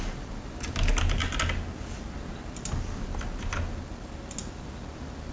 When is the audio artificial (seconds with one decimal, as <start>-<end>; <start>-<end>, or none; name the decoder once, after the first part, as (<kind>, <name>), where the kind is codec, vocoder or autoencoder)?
none